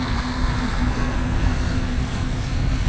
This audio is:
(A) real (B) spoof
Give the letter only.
B